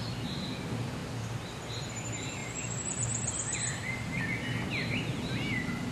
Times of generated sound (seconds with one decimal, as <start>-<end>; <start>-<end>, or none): 2.4-4.2